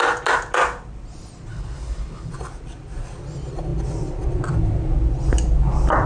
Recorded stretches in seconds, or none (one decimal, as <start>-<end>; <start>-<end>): 0.0-1.5; 2.3-6.1